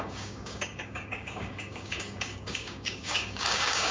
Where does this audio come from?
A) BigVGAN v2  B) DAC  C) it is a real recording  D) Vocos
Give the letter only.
B